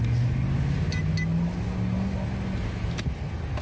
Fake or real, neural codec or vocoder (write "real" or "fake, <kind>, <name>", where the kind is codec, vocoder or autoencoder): real